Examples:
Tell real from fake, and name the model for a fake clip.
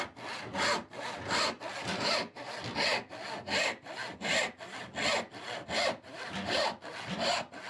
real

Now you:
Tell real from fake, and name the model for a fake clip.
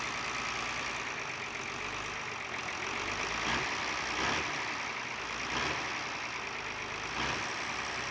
real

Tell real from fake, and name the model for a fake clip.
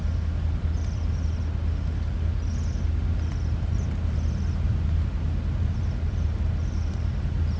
real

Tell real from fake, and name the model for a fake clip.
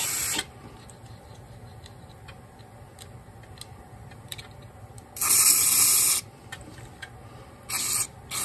real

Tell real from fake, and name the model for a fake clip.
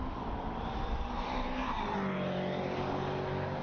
real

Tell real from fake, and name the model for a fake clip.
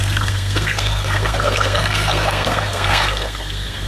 fake, codec, SNAC